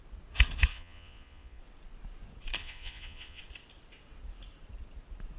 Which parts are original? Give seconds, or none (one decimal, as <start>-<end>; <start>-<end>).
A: 0.0-0.7; 1.6-2.6; 3.4-5.4